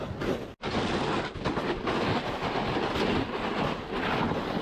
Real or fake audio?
real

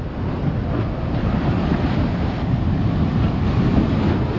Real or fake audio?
real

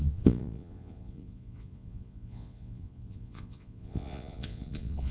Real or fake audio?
fake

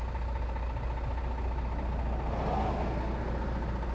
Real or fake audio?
real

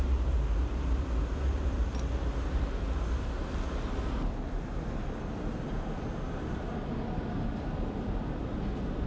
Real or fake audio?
real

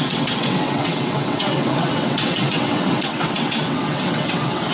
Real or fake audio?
fake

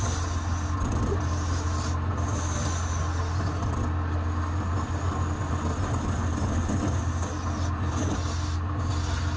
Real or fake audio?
real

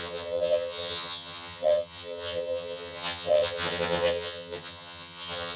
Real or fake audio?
fake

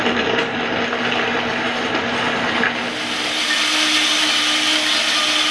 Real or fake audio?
real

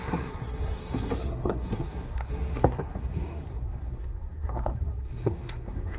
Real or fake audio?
fake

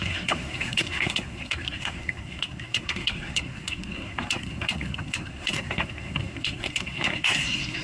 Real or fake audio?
fake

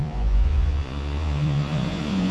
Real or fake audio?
fake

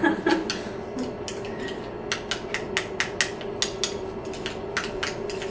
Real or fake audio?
real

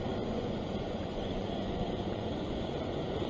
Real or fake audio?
fake